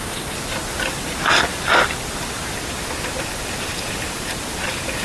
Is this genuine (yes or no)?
yes